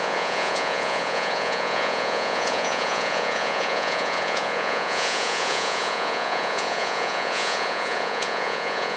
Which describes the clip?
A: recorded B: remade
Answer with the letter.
B